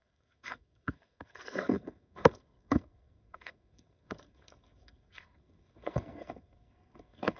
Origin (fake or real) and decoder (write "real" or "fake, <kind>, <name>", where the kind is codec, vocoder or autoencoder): fake, codec, SNAC